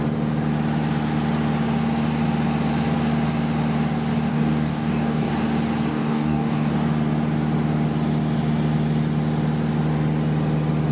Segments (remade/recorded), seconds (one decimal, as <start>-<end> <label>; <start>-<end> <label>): 0.0-4.3 recorded; 4.3-5.3 remade; 5.3-5.9 recorded; 5.9-6.7 remade; 6.7-10.9 recorded

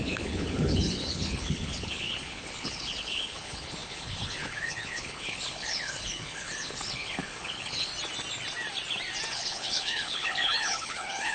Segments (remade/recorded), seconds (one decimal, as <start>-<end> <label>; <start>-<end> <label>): 0.0-7.9 remade; 7.9-9.3 recorded; 9.3-11.3 remade

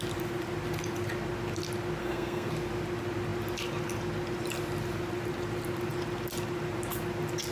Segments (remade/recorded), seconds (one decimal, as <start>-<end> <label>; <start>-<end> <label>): 0.0-2.0 recorded; 2.0-2.5 remade; 2.5-7.5 recorded

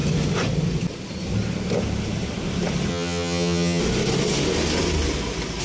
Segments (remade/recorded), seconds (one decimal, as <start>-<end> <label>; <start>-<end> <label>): 0.0-2.9 recorded; 2.9-3.8 remade; 3.8-5.6 recorded

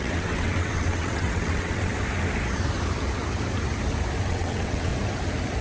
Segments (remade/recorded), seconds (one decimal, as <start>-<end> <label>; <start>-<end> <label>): 0.0-1.9 remade; 1.9-4.3 recorded; 4.3-4.9 remade; 4.9-5.6 recorded